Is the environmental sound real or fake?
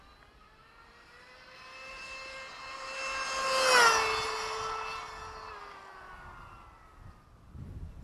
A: real